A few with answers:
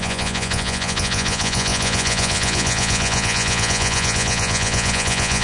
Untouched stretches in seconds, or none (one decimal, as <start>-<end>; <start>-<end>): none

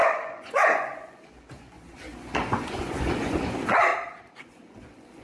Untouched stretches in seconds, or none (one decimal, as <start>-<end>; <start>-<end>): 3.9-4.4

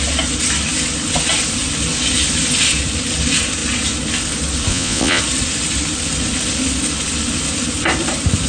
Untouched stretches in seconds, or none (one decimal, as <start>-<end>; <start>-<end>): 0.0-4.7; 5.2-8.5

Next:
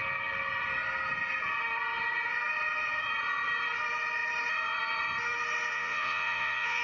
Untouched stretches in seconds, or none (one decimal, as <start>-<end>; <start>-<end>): 0.0-5.7

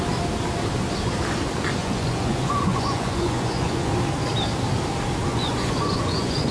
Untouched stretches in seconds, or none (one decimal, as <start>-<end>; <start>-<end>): 0.0-1.8; 3.9-5.3